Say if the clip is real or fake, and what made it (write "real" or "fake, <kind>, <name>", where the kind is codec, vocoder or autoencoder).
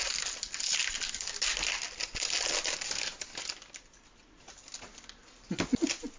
real